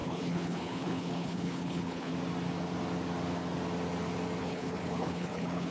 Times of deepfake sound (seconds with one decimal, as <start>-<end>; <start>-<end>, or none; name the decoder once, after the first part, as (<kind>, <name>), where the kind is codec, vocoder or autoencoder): 0.0-2.1 (codec, HILCodec); 4.4-5.7